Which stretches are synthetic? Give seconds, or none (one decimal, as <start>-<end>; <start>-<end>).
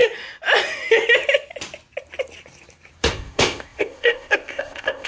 3.1-5.1